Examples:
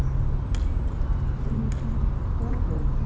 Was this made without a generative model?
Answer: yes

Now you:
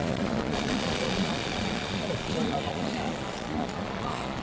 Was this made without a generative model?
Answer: no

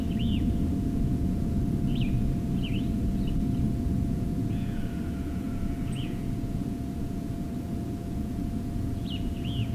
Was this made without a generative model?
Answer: no